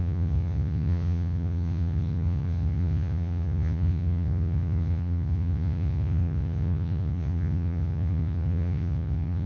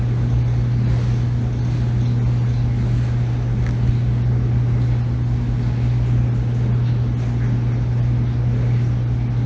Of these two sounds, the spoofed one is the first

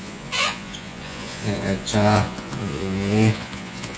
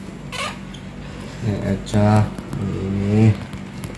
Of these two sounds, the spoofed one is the first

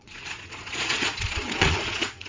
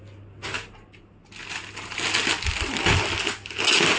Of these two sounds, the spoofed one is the first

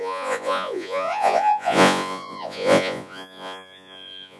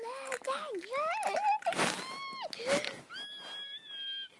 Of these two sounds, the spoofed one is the first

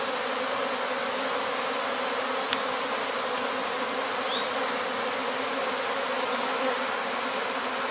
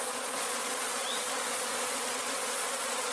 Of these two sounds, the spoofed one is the second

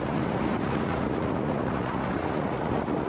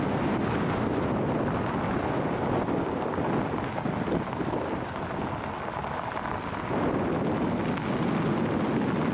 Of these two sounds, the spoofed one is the first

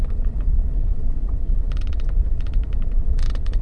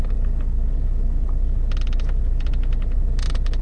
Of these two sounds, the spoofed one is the first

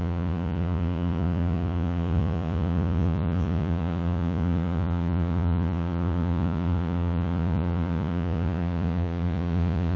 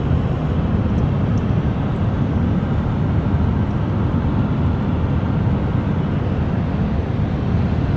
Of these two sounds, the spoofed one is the first